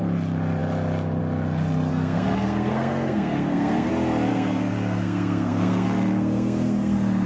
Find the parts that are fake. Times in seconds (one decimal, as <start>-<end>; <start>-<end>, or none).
1.9-3.9; 4.3-7.3